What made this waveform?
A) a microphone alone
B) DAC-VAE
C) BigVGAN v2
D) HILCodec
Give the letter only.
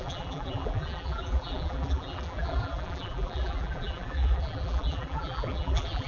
C